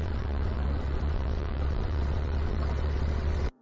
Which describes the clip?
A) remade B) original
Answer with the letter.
A